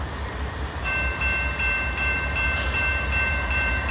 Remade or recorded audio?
remade